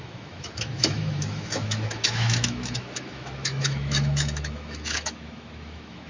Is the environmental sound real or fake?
fake